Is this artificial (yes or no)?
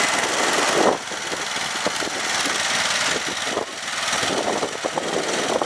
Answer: no